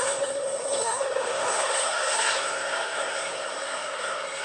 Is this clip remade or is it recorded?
remade